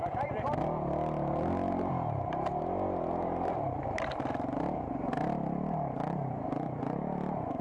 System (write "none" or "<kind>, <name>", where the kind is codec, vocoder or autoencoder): none